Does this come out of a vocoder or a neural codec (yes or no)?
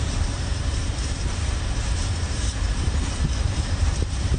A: yes